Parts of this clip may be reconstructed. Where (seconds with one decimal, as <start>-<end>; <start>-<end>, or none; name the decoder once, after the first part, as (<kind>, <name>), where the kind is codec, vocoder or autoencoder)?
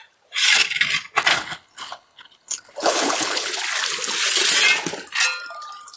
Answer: 1.3-3.5 (codec, HILCodec)